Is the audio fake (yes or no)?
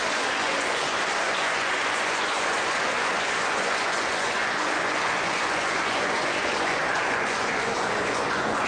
yes